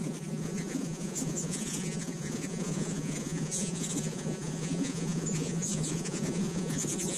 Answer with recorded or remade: remade